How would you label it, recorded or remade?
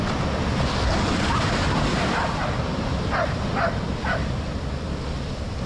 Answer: recorded